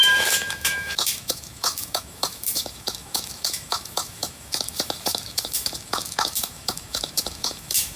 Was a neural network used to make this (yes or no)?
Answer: yes